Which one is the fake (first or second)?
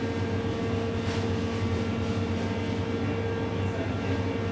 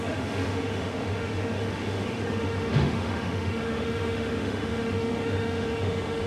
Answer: second